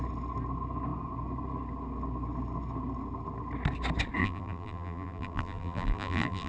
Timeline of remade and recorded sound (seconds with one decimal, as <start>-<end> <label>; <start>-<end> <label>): 0.0-4.2 recorded; 4.2-6.5 remade